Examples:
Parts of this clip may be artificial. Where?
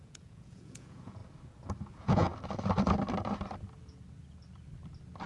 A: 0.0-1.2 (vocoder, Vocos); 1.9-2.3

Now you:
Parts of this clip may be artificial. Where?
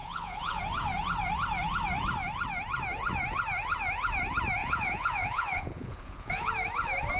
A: 0.0-0.6 (vocoder, Vocos); 4.6-6.5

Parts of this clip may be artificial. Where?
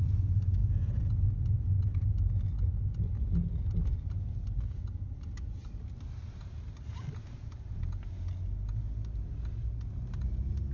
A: none